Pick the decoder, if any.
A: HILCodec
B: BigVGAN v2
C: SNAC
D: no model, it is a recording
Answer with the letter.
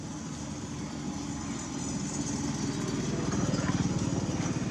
D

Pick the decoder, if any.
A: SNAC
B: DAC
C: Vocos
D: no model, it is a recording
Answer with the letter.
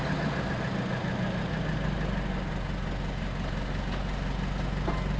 D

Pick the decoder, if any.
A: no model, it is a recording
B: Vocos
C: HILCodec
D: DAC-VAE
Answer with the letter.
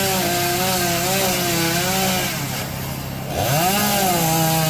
A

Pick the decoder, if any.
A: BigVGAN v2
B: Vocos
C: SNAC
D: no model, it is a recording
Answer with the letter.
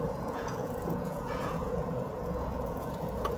B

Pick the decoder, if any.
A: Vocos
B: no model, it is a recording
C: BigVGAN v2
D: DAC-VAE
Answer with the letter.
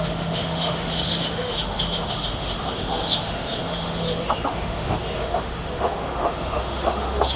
D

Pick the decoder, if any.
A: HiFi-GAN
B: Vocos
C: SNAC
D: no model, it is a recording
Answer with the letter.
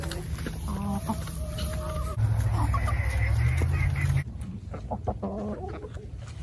D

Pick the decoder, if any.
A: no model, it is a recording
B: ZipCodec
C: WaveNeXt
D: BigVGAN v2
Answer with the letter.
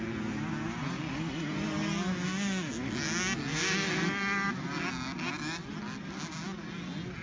A